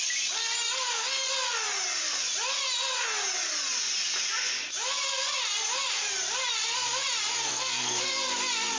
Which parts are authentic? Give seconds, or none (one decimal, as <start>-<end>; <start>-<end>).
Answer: 0.0-7.5; 8.1-8.8